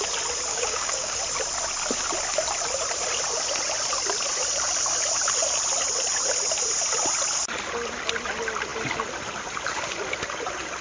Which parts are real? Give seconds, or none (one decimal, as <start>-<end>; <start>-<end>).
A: 0.0-0.5; 1.2-10.8